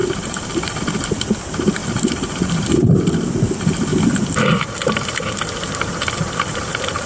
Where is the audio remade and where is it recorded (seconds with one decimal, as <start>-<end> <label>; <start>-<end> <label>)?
0.0-0.8 remade; 0.8-1.8 recorded; 1.8-3.0 remade; 3.0-3.9 recorded; 3.9-7.1 remade